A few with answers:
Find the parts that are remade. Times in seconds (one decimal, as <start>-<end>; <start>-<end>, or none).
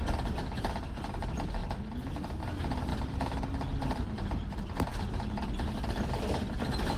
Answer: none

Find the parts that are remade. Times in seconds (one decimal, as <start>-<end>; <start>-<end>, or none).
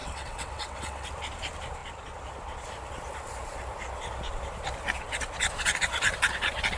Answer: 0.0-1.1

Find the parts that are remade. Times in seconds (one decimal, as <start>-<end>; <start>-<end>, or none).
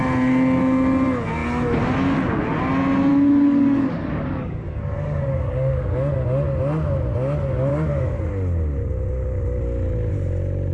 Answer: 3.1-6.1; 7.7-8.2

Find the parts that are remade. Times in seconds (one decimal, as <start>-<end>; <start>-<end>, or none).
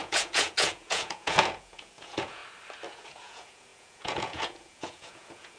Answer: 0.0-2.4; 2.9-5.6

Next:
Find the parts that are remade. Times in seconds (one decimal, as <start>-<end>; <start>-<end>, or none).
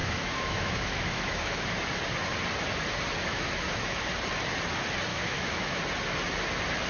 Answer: 0.0-1.6; 3.3-4.0; 5.1-5.8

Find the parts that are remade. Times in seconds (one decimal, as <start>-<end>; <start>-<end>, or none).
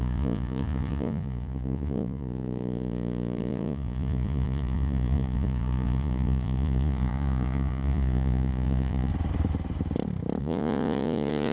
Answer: 0.0-9.1; 10.4-11.5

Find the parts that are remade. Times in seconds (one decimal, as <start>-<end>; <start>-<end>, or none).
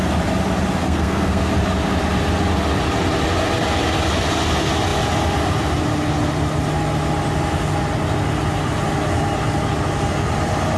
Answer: 0.8-1.5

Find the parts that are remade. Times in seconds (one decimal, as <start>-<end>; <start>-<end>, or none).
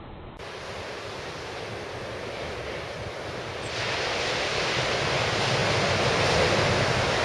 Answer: none